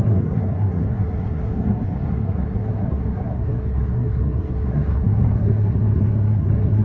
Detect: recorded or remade remade